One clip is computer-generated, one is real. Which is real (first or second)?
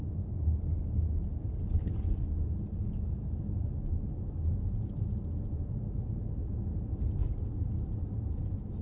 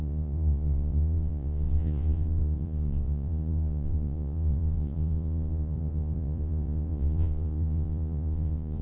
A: first